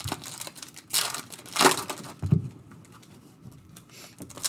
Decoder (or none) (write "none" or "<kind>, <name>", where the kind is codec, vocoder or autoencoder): none